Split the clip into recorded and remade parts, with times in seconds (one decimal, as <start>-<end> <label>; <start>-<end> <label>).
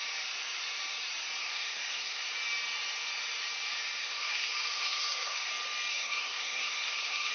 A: 0.0-1.4 recorded; 1.4-2.3 remade; 2.3-4.0 recorded; 4.0-5.5 remade; 5.5-5.9 recorded; 5.9-7.3 remade